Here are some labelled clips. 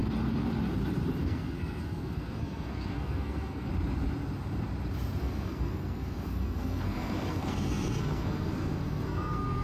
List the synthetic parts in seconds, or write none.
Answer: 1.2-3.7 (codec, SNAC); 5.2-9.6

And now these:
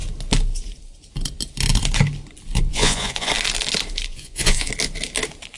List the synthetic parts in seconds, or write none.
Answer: 2.7-3.3 (vocoder, Vocos); 4.1-4.7

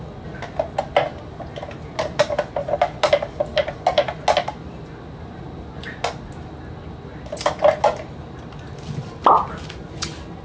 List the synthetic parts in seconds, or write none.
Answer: none